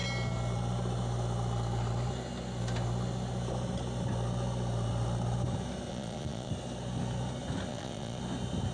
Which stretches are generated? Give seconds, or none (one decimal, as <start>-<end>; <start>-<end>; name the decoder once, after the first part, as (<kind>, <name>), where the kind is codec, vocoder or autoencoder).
5.9-6.5 (vocoder, Vocos); 7.7-8.2